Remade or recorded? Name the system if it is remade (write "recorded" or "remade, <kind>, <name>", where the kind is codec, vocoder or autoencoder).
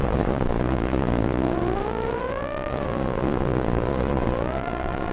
remade, vocoder, Vocos